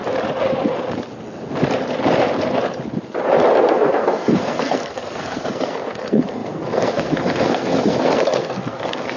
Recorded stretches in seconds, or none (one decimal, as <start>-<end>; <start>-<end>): 0.0-3.7